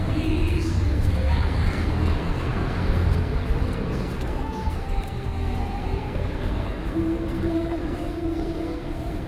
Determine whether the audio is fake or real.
fake